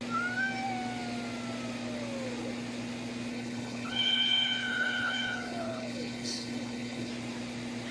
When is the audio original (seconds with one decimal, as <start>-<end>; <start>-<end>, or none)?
0.0-3.3; 7.1-7.9